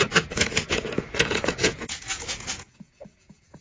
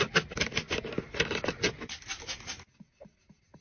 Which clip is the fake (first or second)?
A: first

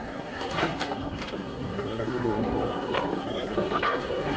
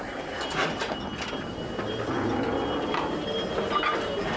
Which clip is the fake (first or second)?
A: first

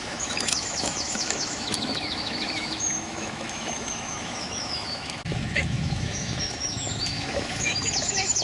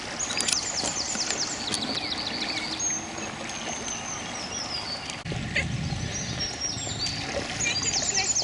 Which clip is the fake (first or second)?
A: first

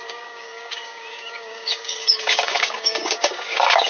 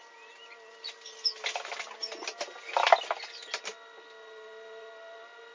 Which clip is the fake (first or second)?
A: first